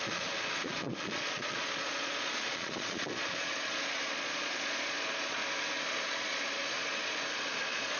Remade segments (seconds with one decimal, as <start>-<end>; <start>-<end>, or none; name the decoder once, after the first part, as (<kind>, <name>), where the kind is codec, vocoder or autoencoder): 0.0-5.4 (vocoder, Vocos); 5.9-8.0